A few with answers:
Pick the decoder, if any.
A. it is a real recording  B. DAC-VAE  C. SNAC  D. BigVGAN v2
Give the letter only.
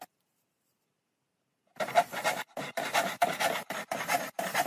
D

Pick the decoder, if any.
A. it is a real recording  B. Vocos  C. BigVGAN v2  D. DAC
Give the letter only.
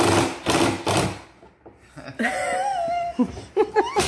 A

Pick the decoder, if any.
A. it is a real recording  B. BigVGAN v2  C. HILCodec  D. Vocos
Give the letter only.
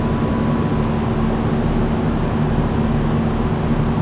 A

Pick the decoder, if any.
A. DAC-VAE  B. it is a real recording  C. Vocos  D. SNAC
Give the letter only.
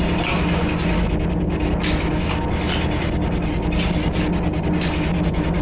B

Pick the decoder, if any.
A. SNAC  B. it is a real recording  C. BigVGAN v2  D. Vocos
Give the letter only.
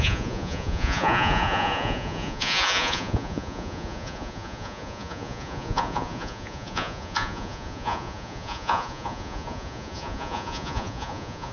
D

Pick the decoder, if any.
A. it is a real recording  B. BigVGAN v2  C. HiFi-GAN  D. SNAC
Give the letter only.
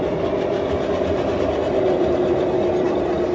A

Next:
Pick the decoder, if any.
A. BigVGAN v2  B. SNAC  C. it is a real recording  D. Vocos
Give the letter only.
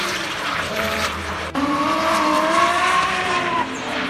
A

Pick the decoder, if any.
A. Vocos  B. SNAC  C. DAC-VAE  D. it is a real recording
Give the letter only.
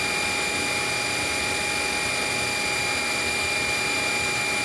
D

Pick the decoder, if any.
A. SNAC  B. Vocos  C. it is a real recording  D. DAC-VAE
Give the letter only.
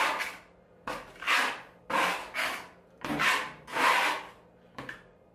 C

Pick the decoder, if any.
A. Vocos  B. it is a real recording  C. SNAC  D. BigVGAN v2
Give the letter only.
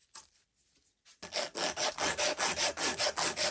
B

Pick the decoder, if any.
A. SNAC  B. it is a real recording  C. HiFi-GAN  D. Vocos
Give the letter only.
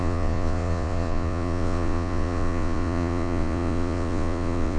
D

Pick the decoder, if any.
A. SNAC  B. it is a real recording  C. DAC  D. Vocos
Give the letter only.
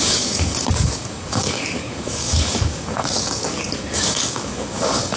C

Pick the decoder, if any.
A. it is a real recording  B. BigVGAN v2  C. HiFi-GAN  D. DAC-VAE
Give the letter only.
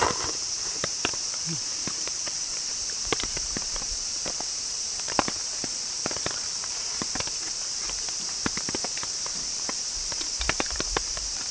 B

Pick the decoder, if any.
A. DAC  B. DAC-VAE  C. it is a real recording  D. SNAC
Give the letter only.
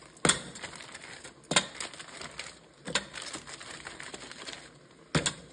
C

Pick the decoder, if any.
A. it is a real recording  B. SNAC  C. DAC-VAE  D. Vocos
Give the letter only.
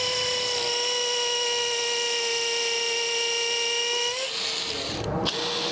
A